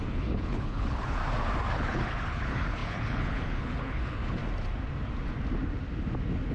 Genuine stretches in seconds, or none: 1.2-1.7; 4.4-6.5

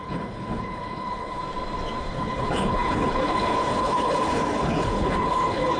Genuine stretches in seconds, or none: 1.4-2.0

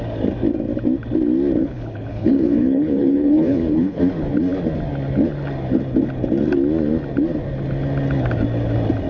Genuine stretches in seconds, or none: 0.0-1.6; 4.0-9.1

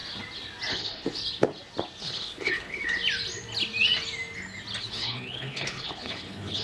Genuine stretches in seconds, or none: 0.0-0.7; 1.2-2.0; 2.8-4.8

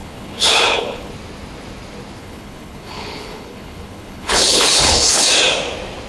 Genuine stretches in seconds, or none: 1.1-2.2; 5.2-6.1

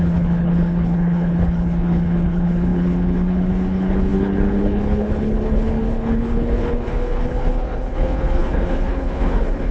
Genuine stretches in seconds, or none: none

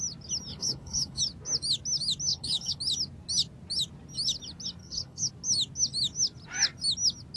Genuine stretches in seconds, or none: 0.0-0.5; 1.2-2.3; 2.8-4.8; 5.3-7.4